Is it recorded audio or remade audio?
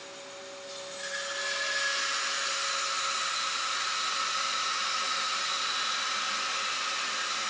recorded